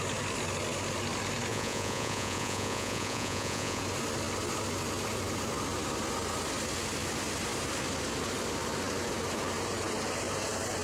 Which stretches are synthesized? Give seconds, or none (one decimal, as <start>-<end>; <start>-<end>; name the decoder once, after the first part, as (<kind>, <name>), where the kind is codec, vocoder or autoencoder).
1.5-3.8 (vocoder, Vocos)